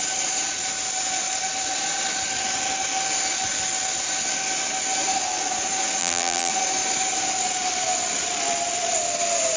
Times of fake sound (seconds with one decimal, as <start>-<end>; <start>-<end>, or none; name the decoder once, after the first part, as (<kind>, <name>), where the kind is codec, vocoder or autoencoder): 6.0-6.5 (vocoder, BigVGAN v2)